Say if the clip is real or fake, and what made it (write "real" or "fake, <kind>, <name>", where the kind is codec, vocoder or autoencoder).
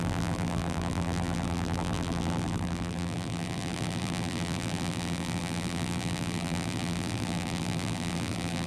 fake, vocoder, BigVGAN v2